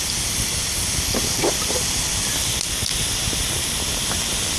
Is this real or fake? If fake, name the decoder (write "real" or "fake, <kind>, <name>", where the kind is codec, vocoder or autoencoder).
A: real